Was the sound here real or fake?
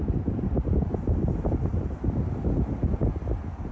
real